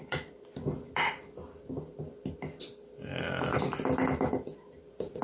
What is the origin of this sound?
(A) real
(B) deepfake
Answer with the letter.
A